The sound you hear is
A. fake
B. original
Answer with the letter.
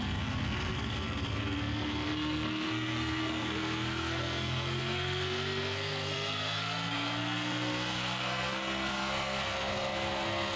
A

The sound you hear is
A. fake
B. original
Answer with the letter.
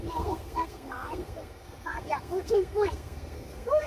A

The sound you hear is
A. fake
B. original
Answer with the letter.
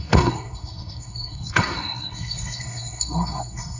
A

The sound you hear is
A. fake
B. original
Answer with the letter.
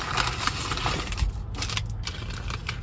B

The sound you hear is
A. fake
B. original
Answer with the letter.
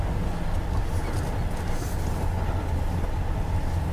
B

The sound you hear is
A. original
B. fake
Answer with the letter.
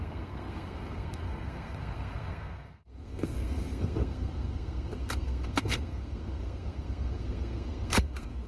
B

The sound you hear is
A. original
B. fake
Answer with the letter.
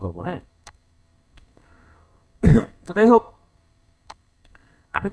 B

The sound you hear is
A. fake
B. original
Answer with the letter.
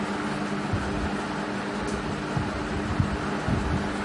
B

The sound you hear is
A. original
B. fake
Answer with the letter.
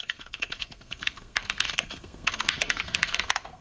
B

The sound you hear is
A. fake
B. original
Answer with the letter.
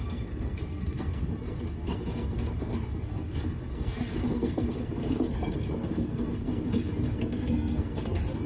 A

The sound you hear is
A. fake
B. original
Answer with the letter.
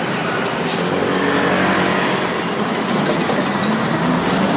B